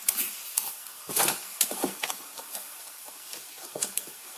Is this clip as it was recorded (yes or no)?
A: no